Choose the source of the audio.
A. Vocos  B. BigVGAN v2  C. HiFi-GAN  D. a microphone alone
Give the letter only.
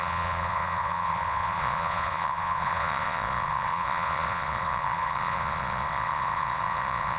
A